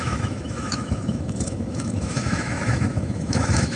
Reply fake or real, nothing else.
fake